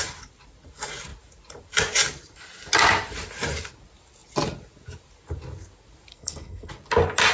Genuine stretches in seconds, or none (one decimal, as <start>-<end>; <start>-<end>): 0.0-6.1; 6.7-7.3